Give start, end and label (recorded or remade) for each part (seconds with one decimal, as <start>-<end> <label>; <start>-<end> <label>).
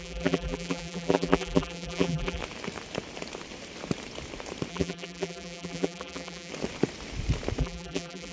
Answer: 0.0-2.4 remade; 2.4-4.7 recorded; 4.7-6.5 remade; 6.5-7.6 recorded; 7.6-8.3 remade